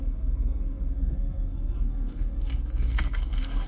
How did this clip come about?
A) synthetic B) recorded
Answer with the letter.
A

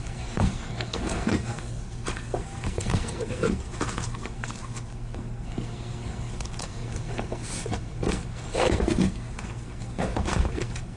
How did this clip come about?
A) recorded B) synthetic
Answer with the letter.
B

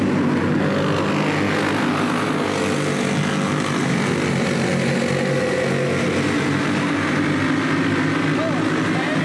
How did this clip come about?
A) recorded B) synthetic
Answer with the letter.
A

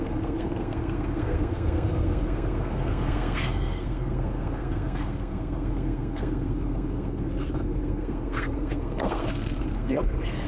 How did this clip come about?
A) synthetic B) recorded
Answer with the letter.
A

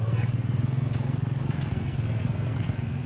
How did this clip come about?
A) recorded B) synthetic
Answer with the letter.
B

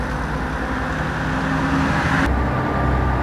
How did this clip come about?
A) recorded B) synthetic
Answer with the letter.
A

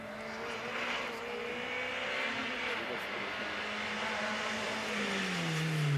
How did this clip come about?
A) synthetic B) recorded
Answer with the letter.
B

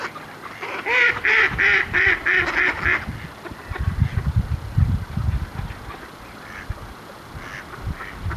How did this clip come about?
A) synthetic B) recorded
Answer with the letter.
B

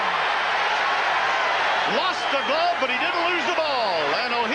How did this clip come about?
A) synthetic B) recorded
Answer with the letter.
B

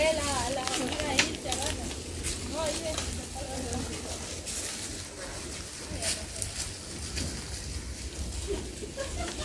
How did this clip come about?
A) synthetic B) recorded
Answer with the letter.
B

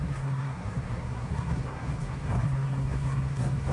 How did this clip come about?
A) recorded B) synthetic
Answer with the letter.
B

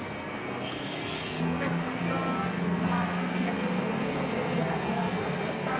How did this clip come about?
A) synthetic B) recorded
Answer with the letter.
A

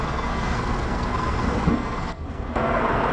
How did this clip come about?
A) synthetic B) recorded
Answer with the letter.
A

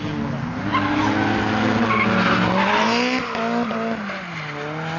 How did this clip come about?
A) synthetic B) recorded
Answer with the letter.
B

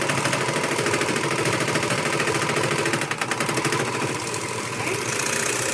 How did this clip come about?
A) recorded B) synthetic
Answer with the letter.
A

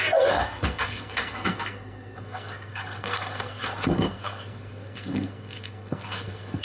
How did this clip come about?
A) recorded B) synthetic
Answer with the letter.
B